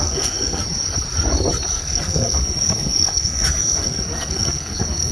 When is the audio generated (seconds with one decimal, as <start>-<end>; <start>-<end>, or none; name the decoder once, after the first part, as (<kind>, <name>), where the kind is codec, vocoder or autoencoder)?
0.0-0.6 (codec, SNAC); 1.7-5.1